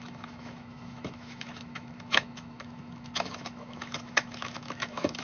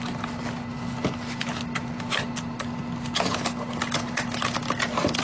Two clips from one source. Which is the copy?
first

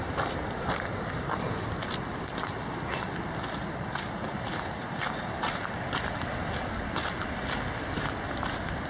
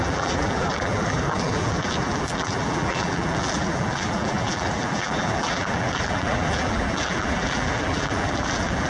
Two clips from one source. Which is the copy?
second